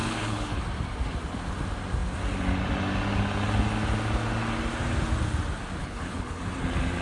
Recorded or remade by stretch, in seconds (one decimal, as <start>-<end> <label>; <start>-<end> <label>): 0.0-0.6 remade; 0.6-5.8 recorded; 5.8-6.4 remade; 6.4-7.0 recorded